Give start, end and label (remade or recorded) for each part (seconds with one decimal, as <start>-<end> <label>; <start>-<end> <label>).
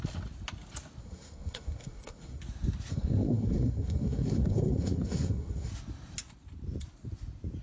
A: 0.0-1.0 recorded; 1.0-2.4 remade; 2.4-2.9 recorded; 2.9-5.7 remade; 5.7-7.6 recorded